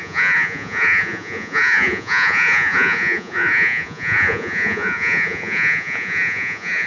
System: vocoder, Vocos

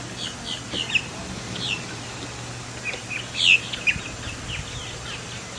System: none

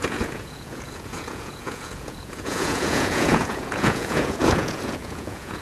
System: vocoder, Vocos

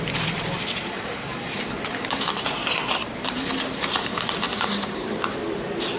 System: vocoder, BigVGAN v2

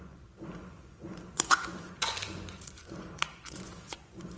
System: vocoder, Vocos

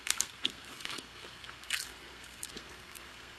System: codec, SNAC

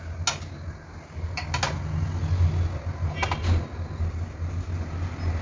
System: none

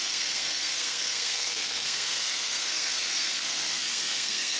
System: codec, SNAC